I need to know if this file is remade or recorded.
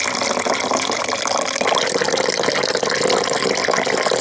recorded